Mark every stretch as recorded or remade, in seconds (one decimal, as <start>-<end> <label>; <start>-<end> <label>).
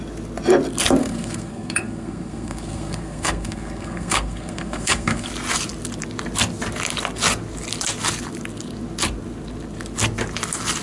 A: 0.0-1.0 recorded; 1.0-5.3 remade; 5.3-10.8 recorded